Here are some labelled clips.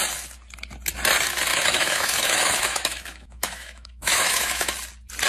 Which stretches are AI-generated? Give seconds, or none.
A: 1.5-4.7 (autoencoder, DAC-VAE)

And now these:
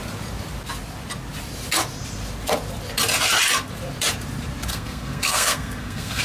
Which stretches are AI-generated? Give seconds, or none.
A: 4.7-6.2 (codec, SNAC)

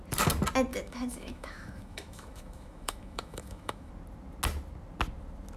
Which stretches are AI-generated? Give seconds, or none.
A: 0.7-3.9 (autoencoder, DAC-VAE)

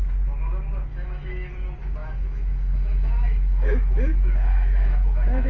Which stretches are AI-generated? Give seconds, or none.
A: 0.9-1.5 (autoencoder, DAC-VAE); 2.0-5.5

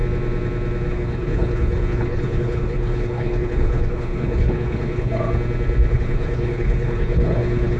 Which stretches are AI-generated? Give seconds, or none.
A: 0.9-5.1 (codec, HILCodec); 5.9-7.8

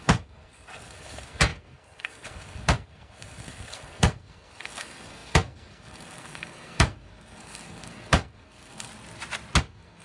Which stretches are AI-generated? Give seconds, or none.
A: 0.0-8.9 (codec, SNAC); 9.6-10.0